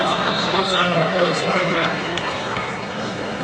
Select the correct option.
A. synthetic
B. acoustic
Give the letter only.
A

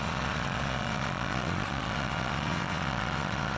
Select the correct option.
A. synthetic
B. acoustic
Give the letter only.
A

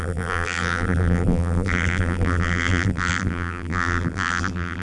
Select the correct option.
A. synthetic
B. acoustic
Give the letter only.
A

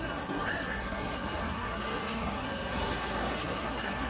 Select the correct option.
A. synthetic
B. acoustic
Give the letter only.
A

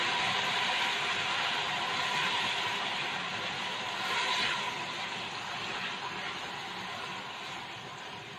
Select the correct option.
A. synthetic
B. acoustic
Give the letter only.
B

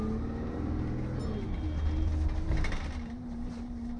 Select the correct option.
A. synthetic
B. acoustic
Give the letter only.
B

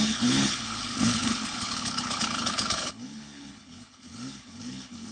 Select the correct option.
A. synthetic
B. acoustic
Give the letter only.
A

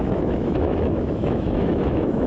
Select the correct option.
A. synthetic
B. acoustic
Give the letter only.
A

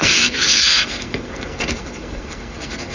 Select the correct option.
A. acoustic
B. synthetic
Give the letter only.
B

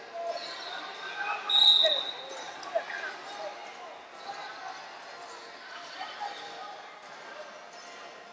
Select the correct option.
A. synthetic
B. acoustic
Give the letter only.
B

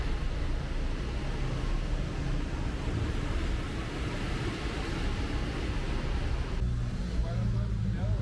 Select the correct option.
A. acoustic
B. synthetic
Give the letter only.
A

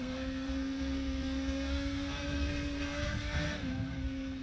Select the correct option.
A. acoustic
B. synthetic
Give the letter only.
B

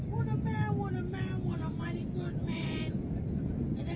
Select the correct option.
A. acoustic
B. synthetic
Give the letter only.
A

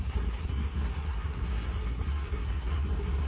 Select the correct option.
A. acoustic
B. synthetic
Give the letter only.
B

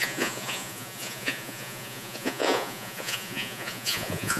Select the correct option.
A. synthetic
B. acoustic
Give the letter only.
A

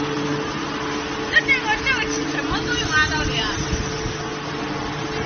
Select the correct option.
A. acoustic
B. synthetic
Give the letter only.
A